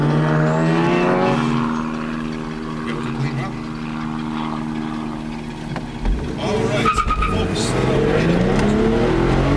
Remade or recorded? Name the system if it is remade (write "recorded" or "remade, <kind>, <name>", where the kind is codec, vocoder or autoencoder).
recorded